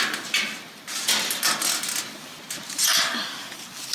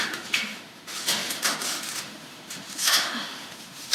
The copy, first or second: second